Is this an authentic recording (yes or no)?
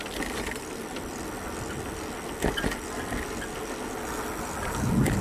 yes